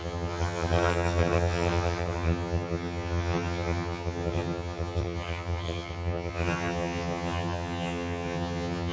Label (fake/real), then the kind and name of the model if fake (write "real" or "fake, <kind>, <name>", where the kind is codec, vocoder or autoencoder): fake, vocoder, HiFi-GAN